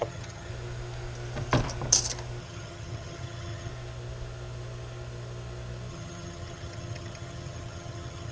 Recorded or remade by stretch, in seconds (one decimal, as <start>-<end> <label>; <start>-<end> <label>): 0.0-0.5 remade; 0.5-2.4 recorded; 2.4-3.7 remade; 3.7-5.9 recorded; 5.9-8.3 remade